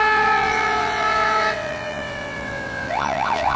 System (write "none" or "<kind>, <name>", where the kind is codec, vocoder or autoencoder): vocoder, WaveNeXt